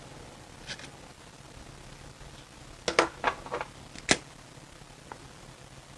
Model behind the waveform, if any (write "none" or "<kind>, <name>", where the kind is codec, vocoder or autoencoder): none